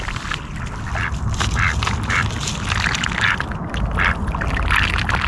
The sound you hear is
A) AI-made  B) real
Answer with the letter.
B